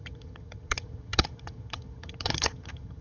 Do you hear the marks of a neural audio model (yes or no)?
yes